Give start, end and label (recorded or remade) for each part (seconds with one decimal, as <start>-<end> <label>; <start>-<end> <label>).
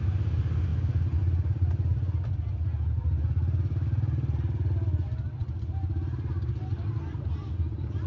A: 0.0-8.1 recorded